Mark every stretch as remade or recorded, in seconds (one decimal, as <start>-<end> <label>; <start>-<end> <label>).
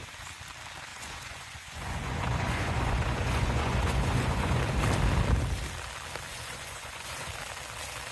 0.0-0.9 recorded; 0.9-4.6 remade; 4.6-6.3 recorded; 6.3-7.3 remade; 7.3-8.1 recorded